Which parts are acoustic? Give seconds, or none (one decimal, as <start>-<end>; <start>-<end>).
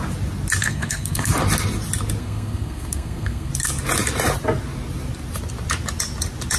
0.0-0.6; 1.3-2.2; 3.5-6.6